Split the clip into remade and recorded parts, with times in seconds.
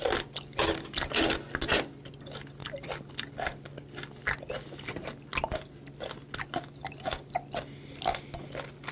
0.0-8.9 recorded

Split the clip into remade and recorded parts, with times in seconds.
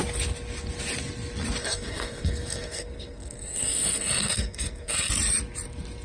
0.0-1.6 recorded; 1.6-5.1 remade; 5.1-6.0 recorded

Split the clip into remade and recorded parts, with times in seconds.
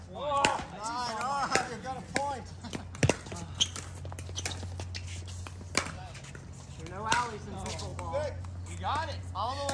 0.0-9.7 recorded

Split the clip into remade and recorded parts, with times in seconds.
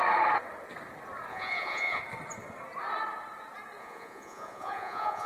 0.0-1.3 recorded; 1.3-2.0 remade; 2.0-3.8 recorded; 3.8-5.3 remade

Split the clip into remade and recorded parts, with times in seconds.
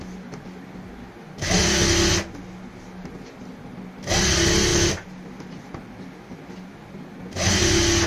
0.0-8.1 recorded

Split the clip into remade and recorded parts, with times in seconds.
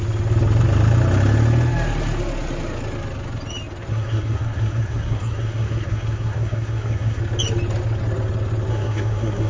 0.0-3.9 recorded; 3.9-7.2 remade; 7.2-8.7 recorded; 8.7-9.5 remade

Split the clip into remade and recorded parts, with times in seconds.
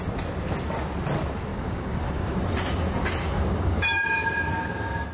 0.0-1.5 recorded; 1.5-2.4 remade; 2.4-3.2 recorded; 3.2-5.1 remade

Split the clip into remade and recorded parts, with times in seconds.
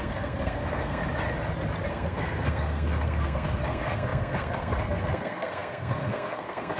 0.0-1.0 remade; 1.0-1.9 recorded; 1.9-6.8 remade